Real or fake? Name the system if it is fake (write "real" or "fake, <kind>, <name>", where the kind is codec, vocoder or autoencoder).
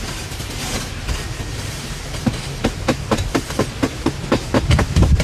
real